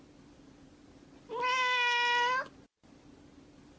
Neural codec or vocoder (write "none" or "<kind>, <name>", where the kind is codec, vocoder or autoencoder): none